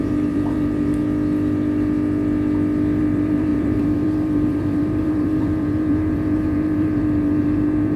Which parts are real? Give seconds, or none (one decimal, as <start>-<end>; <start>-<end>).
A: 1.0-3.0